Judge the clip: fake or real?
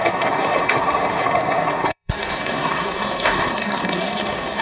fake